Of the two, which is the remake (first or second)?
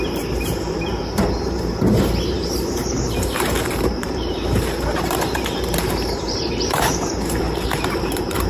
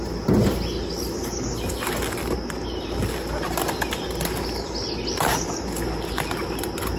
first